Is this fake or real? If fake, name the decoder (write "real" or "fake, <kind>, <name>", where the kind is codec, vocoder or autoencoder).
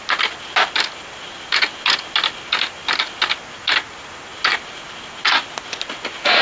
real